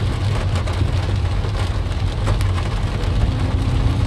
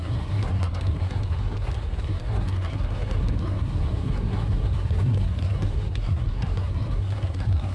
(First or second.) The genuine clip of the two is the first